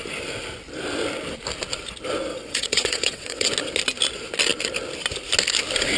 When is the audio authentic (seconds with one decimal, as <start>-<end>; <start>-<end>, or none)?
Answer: 0.0-2.3; 3.5-6.0